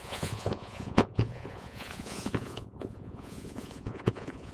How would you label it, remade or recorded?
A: remade